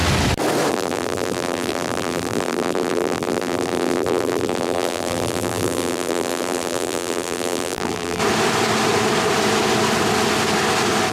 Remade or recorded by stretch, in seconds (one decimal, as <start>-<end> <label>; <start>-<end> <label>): 0.0-0.7 recorded; 0.7-8.2 remade; 8.2-11.1 recorded